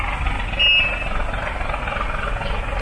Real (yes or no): yes